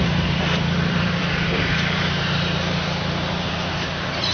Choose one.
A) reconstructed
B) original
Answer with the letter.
A